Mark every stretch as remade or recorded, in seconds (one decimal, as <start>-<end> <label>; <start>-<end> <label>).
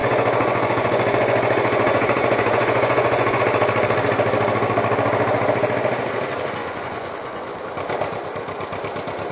0.0-3.4 remade; 3.4-6.6 recorded; 6.6-7.6 remade; 7.6-9.3 recorded